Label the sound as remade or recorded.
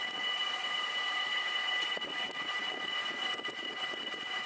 remade